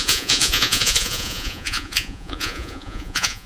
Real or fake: fake